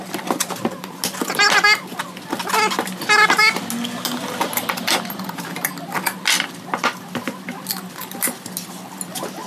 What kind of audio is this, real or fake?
real